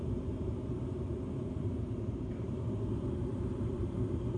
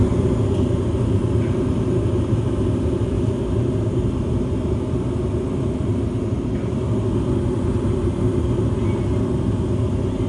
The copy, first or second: first